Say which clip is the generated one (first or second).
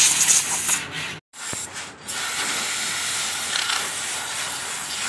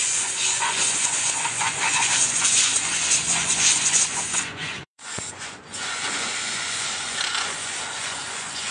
second